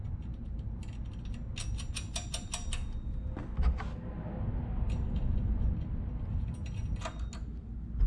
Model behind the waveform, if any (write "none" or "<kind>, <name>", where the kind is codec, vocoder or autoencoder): none